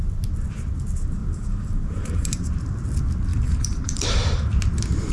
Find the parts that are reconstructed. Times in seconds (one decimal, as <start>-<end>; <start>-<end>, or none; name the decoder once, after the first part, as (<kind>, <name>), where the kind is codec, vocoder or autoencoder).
1.2-2.5 (vocoder, BigVGAN v2); 3.3-4.5